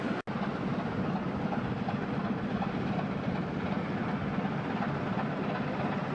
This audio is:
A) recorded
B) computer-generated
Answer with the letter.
A